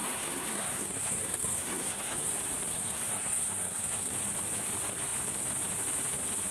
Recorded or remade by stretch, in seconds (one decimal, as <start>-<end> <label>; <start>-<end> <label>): 0.0-2.3 remade; 2.3-2.7 recorded; 2.7-4.1 remade; 4.1-6.5 recorded

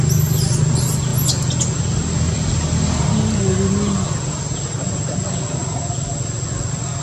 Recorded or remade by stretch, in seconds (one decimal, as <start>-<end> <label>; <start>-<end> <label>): 0.0-7.0 recorded